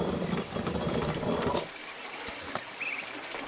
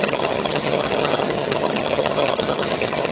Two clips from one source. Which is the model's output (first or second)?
second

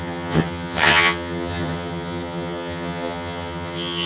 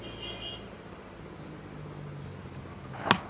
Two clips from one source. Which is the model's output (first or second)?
first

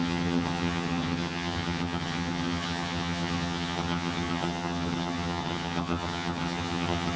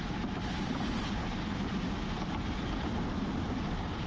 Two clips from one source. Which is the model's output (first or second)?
first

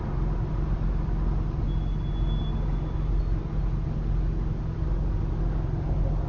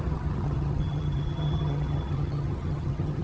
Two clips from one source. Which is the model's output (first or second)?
second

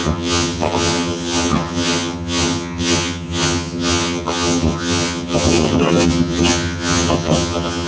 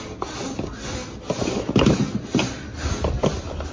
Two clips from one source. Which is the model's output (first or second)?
first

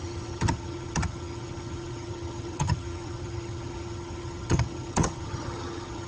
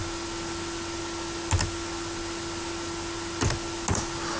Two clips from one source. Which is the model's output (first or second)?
first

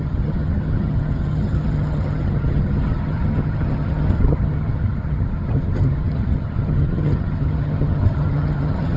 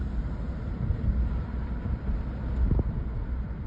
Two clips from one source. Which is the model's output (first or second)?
first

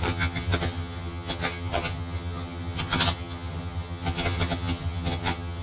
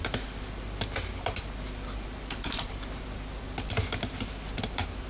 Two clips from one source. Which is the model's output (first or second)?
first